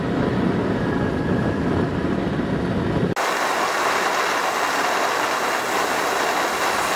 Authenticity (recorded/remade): recorded